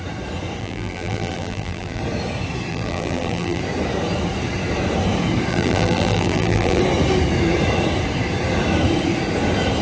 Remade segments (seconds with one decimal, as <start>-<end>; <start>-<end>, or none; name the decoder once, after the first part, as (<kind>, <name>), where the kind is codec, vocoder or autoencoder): 0.6-2.0 (vocoder, BigVGAN v2); 2.7-3.6; 5.5-6.8